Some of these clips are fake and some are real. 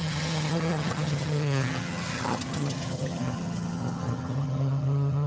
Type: fake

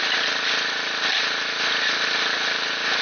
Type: real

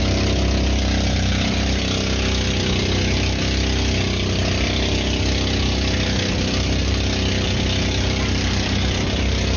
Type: real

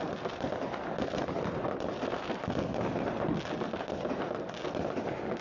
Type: real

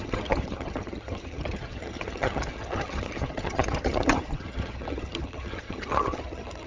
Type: fake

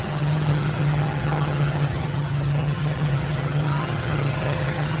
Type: fake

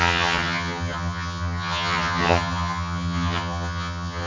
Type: fake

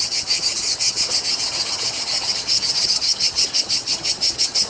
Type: fake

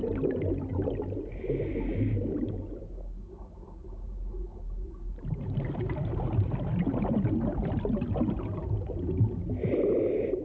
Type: real